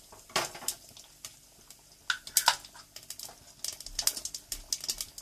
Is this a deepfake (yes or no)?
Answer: no